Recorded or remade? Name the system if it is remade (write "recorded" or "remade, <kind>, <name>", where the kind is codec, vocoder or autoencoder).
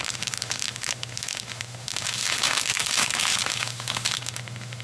remade, autoencoder, DAC-VAE